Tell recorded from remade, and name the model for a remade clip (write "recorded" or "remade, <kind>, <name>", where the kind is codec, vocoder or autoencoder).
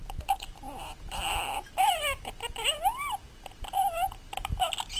remade, vocoder, BigVGAN v2